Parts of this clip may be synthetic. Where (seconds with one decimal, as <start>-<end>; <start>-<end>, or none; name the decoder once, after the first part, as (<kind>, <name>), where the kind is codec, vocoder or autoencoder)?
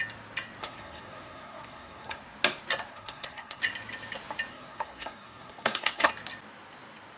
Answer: 0.6-2.2 (codec, SNAC); 2.9-3.6; 4.5-6.1